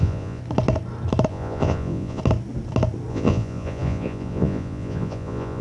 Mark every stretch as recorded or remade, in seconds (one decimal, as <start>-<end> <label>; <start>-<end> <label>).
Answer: 0.0-0.4 remade; 0.4-1.3 recorded; 1.3-2.2 remade; 2.2-3.1 recorded; 3.1-5.6 remade